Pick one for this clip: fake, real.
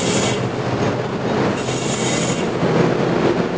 real